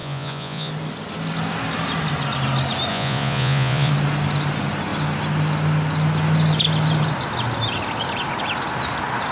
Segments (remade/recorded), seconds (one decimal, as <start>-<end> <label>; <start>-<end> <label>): 0.0-0.7 remade; 0.7-2.9 recorded; 2.9-3.9 remade; 3.9-9.3 recorded